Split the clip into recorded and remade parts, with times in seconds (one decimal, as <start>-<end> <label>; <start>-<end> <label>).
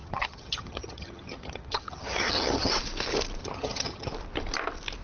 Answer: 0.0-2.7 remade; 2.7-3.4 recorded; 3.4-4.1 remade; 4.1-5.0 recorded